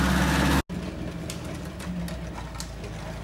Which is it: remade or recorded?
recorded